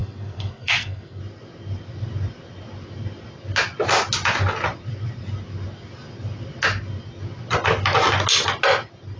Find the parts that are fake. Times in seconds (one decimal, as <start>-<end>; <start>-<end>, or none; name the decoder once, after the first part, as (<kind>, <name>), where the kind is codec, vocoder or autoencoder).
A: 0.0-1.2 (codec, SNAC)